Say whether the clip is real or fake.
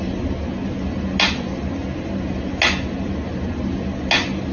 real